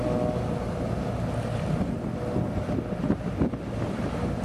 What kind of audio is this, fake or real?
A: real